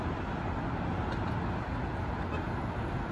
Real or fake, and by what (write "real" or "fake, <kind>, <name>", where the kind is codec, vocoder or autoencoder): real